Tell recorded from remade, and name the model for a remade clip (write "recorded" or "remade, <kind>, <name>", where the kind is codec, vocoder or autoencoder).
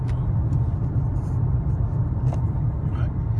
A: recorded